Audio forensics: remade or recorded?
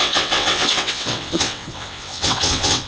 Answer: remade